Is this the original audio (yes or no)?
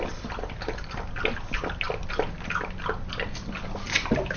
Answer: yes